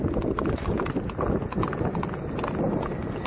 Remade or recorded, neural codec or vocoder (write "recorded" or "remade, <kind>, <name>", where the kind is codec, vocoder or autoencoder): recorded